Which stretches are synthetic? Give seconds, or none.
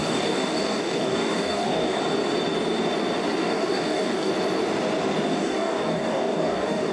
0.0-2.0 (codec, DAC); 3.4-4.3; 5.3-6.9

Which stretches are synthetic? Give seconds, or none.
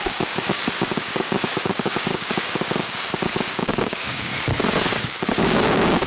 0.0-4.3 (codec, DAC); 5.0-6.1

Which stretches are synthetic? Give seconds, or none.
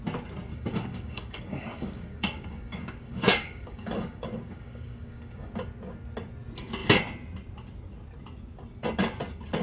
0.5-5.5 (codec, DAC)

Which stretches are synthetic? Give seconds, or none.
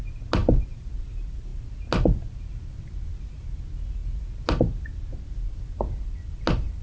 none